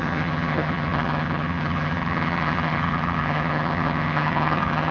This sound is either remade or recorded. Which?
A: remade